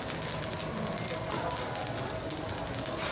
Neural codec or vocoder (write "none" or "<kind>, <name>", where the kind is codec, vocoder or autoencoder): none